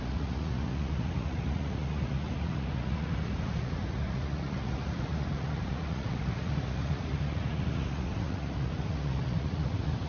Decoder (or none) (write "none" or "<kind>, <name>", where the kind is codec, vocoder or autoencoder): vocoder, Vocos